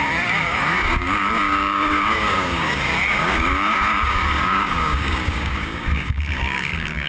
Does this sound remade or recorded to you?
remade